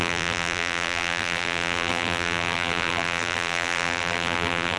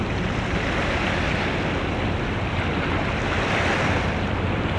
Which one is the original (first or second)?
second